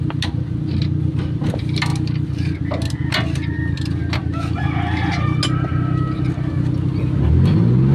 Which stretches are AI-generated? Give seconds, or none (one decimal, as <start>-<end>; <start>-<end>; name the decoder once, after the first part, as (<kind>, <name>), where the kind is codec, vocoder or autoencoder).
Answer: none